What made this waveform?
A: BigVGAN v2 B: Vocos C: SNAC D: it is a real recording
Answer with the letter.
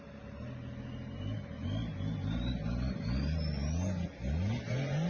D